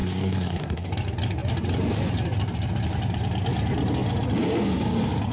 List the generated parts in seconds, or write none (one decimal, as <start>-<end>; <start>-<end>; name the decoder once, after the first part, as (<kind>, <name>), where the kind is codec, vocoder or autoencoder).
0.0-0.9 (codec, SNAC)